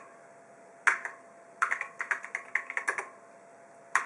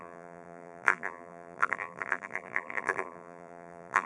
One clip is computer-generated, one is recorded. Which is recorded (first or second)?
first